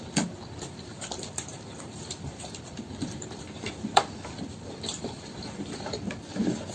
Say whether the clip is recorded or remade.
remade